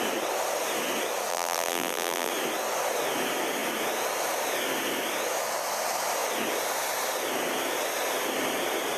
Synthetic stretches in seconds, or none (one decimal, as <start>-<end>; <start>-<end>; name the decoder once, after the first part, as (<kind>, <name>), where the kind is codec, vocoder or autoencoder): 1.3-2.3 (vocoder, BigVGAN v2)